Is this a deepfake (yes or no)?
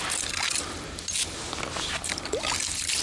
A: no